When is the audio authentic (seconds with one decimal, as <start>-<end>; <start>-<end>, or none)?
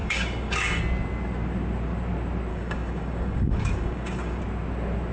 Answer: 0.8-2.5; 4.4-5.1